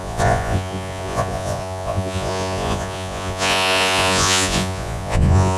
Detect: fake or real fake